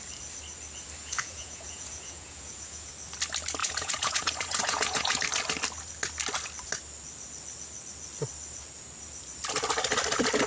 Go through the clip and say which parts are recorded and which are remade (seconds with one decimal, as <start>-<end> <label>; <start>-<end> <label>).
0.0-1.0 recorded; 1.0-2.9 remade; 2.9-3.6 recorded; 3.6-5.2 remade; 5.2-10.5 recorded